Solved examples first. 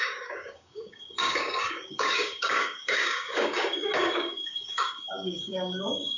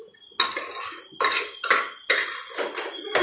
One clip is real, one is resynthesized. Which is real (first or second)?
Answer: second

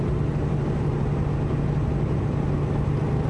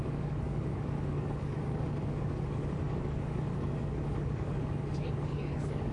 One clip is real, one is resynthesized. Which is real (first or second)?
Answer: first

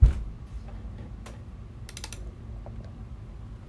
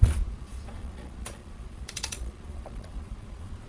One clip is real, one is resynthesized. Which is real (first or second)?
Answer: first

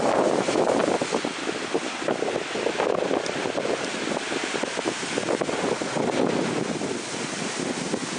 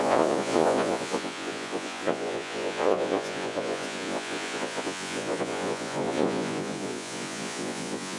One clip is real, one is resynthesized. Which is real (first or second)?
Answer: first